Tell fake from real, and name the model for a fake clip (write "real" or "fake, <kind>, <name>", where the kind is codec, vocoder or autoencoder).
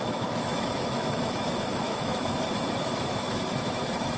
fake, autoencoder, DAC-VAE